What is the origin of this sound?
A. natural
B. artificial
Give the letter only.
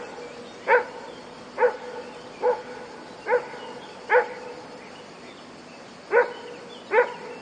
A